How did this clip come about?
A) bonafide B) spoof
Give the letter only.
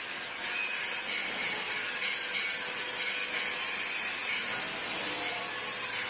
A